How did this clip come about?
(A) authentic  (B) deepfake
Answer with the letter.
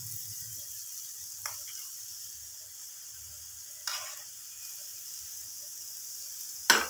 A